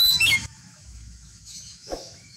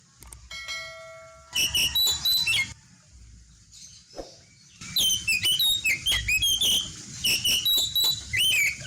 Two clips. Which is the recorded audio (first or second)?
second